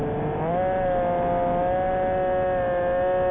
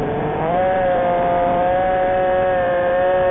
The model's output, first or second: second